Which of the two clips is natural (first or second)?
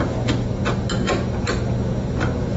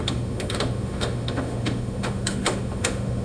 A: first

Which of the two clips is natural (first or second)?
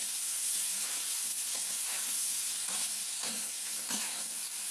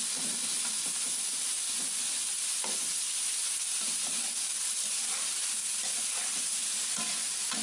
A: second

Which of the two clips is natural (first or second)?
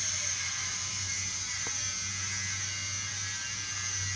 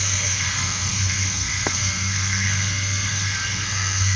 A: first